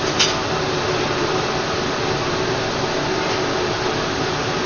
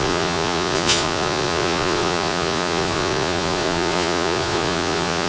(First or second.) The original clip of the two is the first